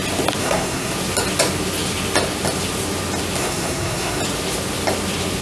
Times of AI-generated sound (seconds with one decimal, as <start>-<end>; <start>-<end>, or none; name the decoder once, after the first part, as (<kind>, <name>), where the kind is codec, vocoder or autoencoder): 0.4-0.9 (codec, SNAC); 3.4-4.2